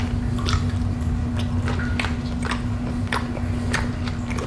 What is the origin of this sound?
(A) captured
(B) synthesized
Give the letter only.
A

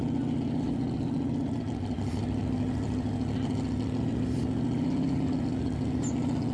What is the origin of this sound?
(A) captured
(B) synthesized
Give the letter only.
A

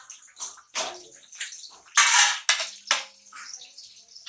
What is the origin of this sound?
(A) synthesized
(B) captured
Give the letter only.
B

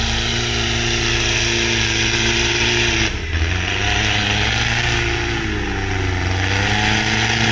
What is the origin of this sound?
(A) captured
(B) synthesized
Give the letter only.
A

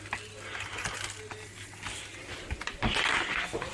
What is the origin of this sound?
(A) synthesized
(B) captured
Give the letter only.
B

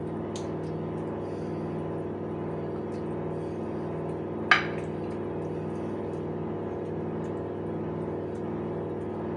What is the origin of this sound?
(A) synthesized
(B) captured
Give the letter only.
B